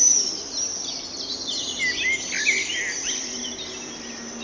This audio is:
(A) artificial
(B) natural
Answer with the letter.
B